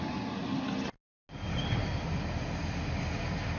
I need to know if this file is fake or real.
real